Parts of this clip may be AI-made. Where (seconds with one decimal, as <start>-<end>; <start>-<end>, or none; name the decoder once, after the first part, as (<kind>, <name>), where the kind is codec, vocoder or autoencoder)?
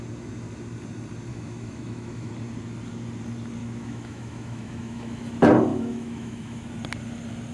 1.3-2.3 (autoencoder, DAC-VAE); 3.6-5.2; 5.7-6.7